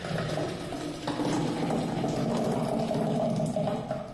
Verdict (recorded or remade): recorded